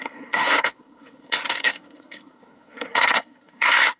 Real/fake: fake